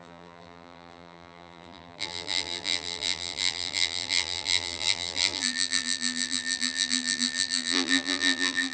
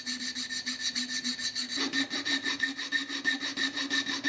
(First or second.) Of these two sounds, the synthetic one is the first